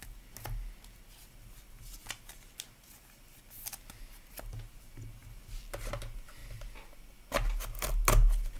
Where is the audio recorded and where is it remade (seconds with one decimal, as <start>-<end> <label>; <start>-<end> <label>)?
0.0-8.6 recorded